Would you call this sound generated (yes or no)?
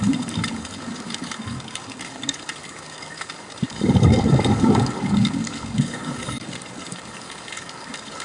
yes